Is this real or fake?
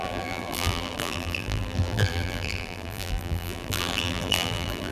fake